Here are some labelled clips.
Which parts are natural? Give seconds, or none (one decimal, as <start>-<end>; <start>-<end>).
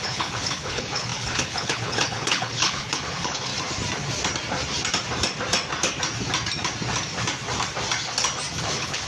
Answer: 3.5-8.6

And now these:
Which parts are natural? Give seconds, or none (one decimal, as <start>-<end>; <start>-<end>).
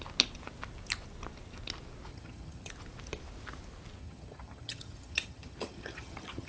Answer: 0.0-2.1; 2.7-4.0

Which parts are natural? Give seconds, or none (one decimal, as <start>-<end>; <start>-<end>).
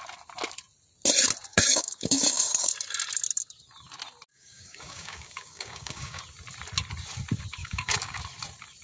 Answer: 0.0-1.5; 2.7-4.3; 6.2-7.6; 8.2-8.8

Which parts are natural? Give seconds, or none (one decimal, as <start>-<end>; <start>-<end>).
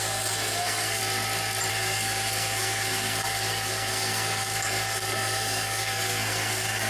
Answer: 1.0-1.7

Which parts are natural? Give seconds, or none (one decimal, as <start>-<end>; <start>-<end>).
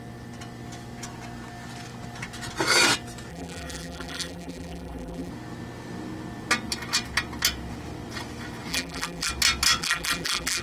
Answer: 0.0-3.3; 5.3-8.7; 9.3-9.8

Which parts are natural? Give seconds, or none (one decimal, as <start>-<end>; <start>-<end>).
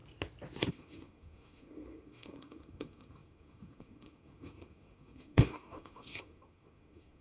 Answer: 0.0-0.7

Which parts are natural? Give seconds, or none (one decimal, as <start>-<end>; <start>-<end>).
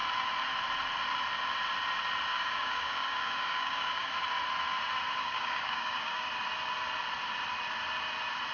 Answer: 0.0-2.3; 4.1-5.2; 6.3-8.5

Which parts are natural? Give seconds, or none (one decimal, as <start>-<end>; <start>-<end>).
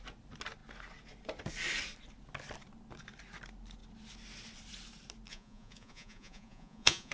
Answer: 0.0-5.3